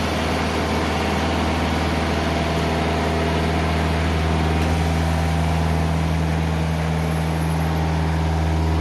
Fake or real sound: real